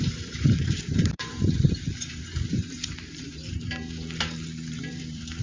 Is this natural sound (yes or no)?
no